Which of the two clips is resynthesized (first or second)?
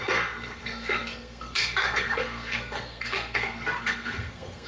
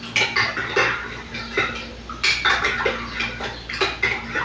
first